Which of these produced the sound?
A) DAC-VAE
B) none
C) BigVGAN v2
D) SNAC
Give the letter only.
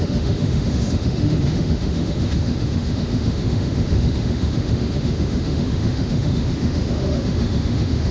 A